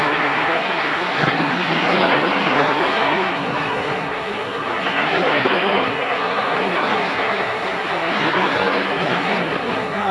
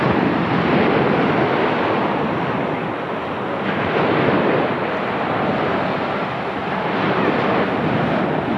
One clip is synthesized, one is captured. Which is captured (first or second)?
second